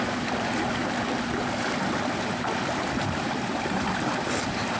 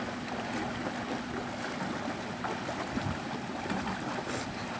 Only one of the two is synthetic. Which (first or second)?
first